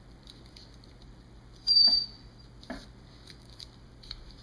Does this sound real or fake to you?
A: fake